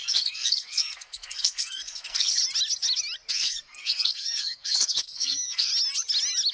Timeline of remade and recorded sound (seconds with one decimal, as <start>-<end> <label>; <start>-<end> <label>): 0.0-2.4 remade; 2.4-3.3 recorded; 3.3-5.7 remade; 5.7-6.5 recorded